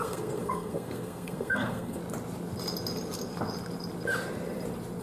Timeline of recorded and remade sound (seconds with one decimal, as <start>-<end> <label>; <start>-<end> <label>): 0.0-2.0 remade; 2.0-5.0 recorded